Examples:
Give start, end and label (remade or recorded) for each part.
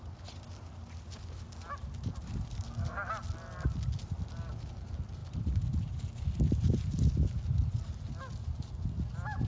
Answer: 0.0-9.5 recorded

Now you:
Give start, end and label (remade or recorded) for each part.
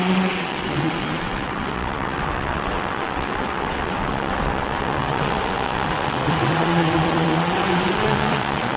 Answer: 0.0-8.8 remade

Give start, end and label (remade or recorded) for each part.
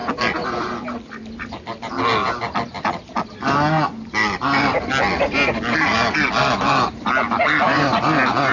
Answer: 0.0-8.5 recorded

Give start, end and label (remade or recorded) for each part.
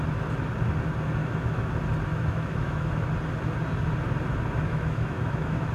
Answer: 0.0-1.2 recorded; 1.2-1.7 remade; 1.7-2.1 recorded; 2.1-2.9 remade; 2.9-4.6 recorded; 4.6-5.7 remade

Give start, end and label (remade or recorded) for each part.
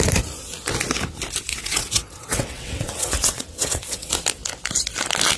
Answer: 0.0-1.5 recorded; 1.5-4.1 remade; 4.1-5.4 recorded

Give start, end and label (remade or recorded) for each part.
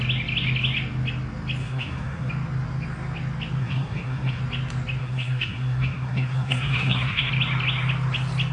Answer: 0.0-1.6 recorded; 1.6-2.3 remade; 2.3-3.6 recorded; 3.6-4.4 remade; 4.4-5.0 recorded; 5.0-7.3 remade; 7.3-8.5 recorded